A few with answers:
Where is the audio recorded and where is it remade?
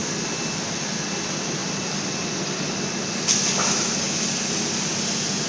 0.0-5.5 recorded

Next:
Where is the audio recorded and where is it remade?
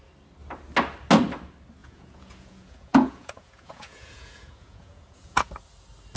0.0-1.8 recorded; 1.8-5.5 remade; 5.5-6.2 recorded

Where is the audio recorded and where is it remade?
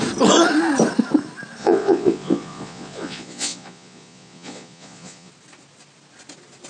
0.0-1.6 recorded; 1.6-5.3 remade; 5.3-6.7 recorded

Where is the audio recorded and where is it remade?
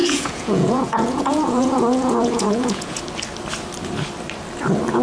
0.0-3.0 remade; 3.0-5.0 recorded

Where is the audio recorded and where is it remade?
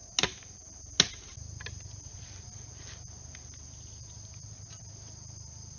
0.0-5.8 recorded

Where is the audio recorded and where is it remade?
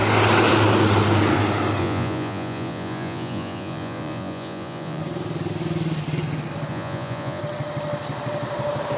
0.0-1.8 recorded; 1.8-5.0 remade; 5.0-6.7 recorded; 6.7-7.4 remade; 7.4-9.0 recorded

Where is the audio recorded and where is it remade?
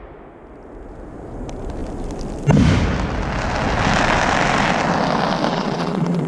0.0-5.5 recorded; 5.5-6.3 remade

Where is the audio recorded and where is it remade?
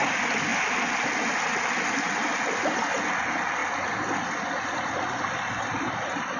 0.0-6.4 recorded